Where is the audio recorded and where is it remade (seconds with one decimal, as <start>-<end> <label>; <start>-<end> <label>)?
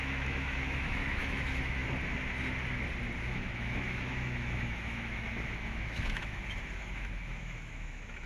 0.0-1.8 remade; 1.8-3.2 recorded; 3.2-8.3 remade